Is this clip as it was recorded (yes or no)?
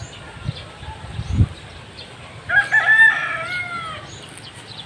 yes